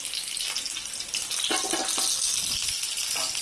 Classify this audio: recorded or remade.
recorded